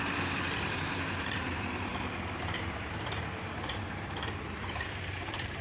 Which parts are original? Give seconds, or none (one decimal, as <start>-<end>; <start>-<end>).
0.0-1.9